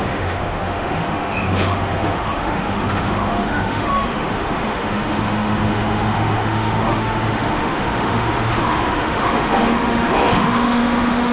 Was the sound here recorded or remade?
remade